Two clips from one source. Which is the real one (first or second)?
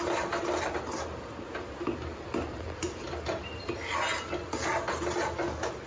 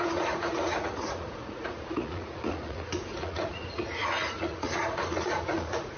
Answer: first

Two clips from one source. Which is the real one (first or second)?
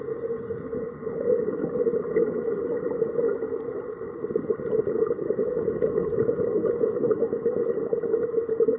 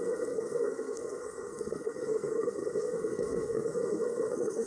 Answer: first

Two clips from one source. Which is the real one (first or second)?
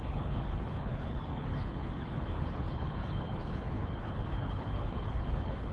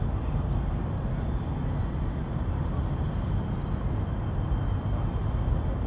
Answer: second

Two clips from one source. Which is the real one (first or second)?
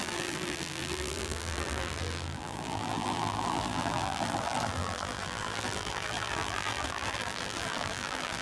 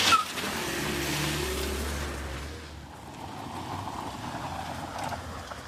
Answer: second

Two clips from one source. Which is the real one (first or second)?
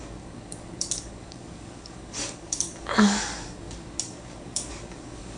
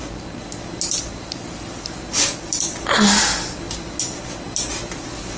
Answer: second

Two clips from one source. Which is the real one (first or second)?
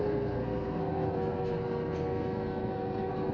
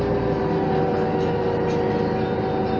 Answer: second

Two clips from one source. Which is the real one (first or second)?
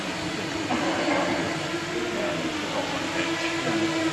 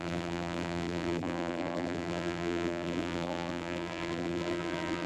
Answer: first